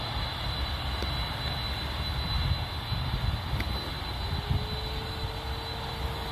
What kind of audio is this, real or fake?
real